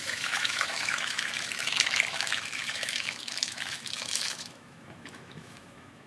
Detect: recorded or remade remade